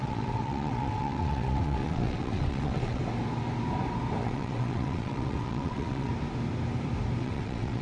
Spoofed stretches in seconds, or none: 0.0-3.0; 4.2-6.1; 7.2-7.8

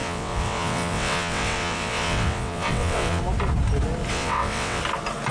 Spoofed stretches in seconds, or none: 0.0-3.2; 4.1-4.8

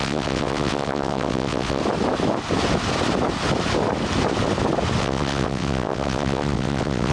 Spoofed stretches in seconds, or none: 0.0-1.8; 5.0-7.1

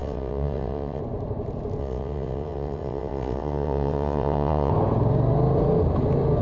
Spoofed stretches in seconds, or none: 0.0-1.0; 1.8-4.7

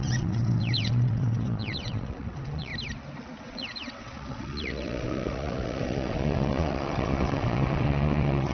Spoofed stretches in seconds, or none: 0.0-2.7; 3.4-8.5

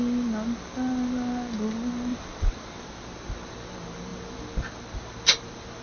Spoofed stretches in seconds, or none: 2.1-2.9

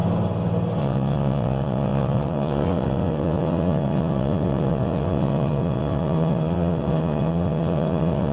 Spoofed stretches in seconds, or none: 0.8-8.3

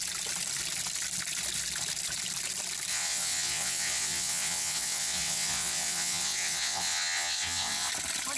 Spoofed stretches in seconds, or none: 2.9-7.9